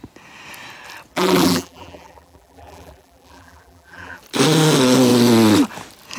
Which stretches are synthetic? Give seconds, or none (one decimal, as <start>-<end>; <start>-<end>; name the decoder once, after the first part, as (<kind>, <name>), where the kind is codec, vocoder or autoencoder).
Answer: 1.1-4.2 (vocoder, BigVGAN v2)